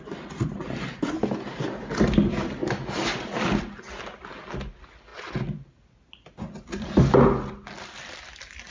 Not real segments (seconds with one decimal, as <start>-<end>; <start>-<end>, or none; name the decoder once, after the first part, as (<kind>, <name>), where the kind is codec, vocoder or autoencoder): none